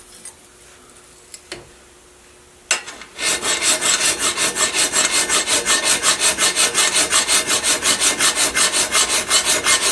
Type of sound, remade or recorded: recorded